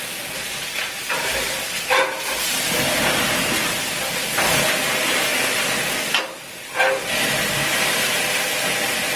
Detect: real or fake real